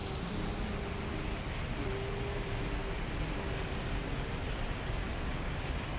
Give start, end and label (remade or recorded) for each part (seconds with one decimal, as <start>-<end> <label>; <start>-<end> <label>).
0.0-2.8 recorded; 2.8-3.4 remade; 3.4-6.0 recorded